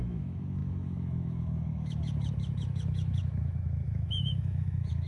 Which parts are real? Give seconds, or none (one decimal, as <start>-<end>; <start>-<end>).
none